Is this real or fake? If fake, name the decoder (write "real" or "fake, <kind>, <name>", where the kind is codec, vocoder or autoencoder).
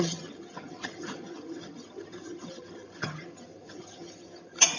fake, vocoder, HiFi-GAN